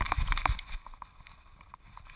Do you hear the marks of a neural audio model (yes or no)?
yes